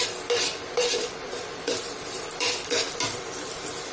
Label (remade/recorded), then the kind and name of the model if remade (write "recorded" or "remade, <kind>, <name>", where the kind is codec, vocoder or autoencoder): remade, vocoder, BigVGAN v2